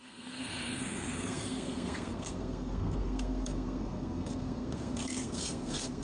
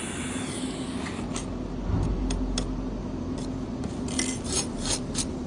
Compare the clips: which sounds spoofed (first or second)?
first